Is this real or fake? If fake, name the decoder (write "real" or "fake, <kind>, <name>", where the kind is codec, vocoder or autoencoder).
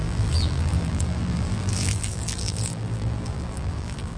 fake, vocoder, BigVGAN v2